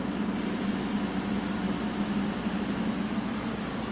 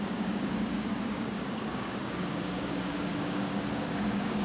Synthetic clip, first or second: second